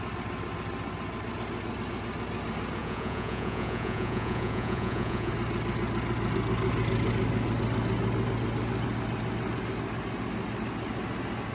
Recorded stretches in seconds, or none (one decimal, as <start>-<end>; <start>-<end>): 0.0-2.8; 5.3-11.5